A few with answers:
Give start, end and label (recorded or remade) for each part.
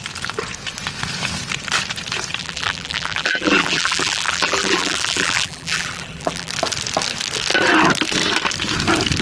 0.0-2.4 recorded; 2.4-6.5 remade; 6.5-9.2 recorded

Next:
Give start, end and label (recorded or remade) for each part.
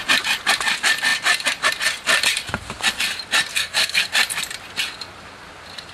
0.0-3.5 recorded; 3.5-4.1 remade; 4.1-5.9 recorded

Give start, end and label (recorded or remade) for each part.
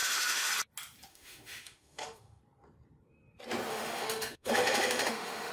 0.0-0.5 remade; 0.5-1.1 recorded; 1.1-2.4 remade; 2.4-3.7 recorded; 3.7-5.5 remade